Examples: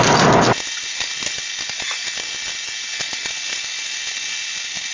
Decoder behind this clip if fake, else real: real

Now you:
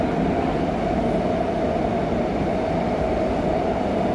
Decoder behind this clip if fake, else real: real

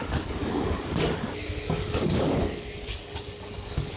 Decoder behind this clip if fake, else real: fake, codec, DAC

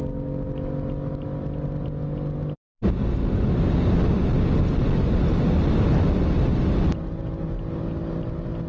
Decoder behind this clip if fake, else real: real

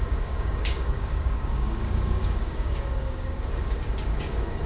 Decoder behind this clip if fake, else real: fake, codec, DAC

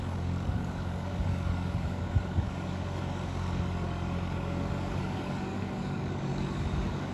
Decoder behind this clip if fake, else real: fake, codec, DAC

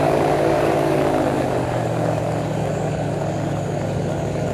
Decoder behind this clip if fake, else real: fake, codec, DAC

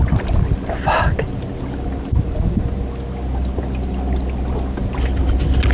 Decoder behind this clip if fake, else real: real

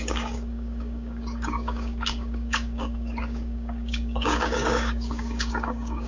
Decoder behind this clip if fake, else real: fake, codec, DAC